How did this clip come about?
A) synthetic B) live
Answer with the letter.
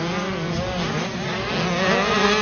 B